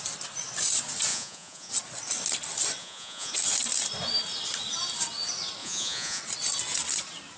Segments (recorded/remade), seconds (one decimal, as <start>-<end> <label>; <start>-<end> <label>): 0.0-1.1 recorded; 1.1-1.7 remade; 1.7-2.8 recorded; 2.8-3.3 remade; 3.3-5.6 recorded; 5.6-6.2 remade; 6.2-7.4 recorded